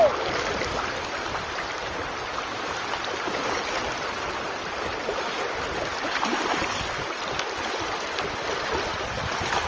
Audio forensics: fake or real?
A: real